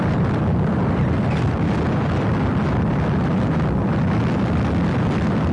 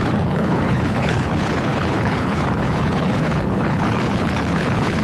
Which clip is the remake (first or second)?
second